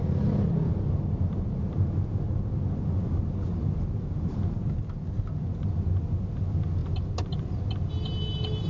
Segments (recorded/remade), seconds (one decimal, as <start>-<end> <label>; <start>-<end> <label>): 0.0-8.7 recorded

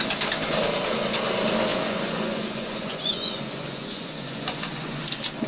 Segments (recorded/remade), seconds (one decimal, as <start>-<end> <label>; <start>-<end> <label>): 0.0-1.7 recorded; 1.7-5.0 remade; 5.0-5.5 recorded